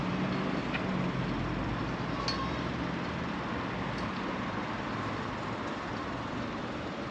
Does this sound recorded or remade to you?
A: recorded